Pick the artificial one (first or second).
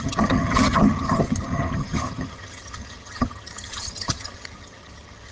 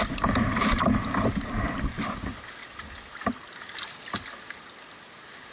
first